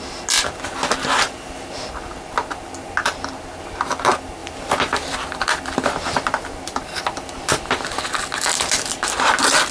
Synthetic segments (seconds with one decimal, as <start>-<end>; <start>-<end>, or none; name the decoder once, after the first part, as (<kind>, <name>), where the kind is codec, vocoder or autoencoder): 4.4-7.5 (vocoder, BigVGAN v2)